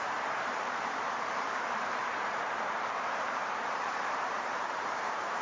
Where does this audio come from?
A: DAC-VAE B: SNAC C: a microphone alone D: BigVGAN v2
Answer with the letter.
D